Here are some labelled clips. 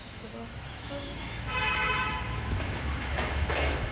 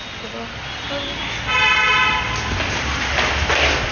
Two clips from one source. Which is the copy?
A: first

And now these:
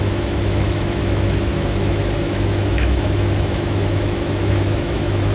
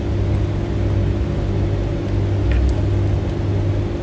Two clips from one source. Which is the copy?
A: first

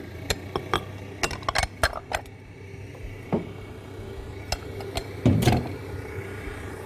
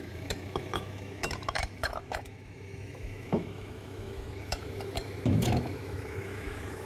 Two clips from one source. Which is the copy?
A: second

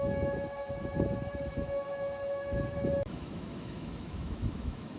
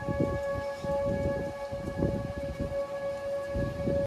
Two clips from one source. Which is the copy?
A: first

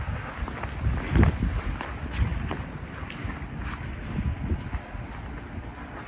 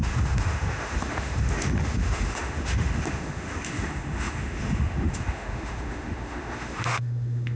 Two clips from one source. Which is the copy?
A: second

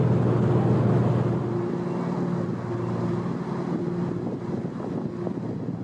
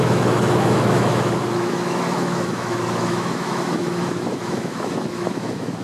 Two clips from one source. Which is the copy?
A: second